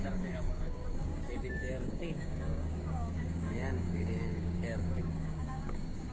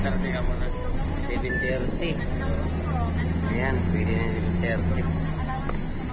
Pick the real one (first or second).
second